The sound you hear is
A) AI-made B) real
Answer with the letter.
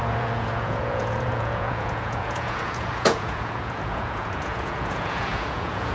A